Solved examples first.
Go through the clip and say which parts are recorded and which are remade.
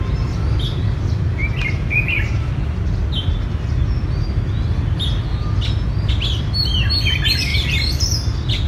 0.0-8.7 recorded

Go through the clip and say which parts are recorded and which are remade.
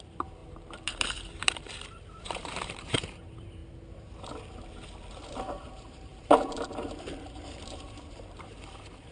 0.0-3.6 remade; 3.6-5.3 recorded; 5.3-9.1 remade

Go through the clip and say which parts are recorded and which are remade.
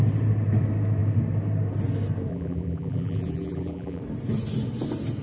0.0-2.3 recorded; 2.3-4.0 remade; 4.0-5.2 recorded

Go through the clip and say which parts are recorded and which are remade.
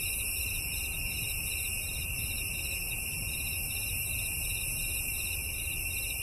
0.0-6.2 remade